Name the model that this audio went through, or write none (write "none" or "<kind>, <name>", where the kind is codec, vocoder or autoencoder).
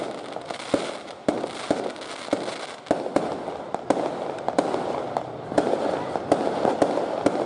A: none